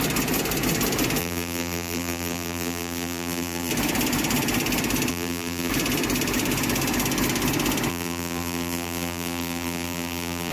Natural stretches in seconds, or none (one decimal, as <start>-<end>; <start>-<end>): 0.0-1.2; 3.7-5.1; 5.7-7.9